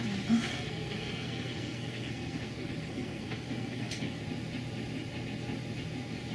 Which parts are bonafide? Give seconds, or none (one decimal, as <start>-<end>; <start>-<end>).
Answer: 0.0-0.5; 4.2-6.3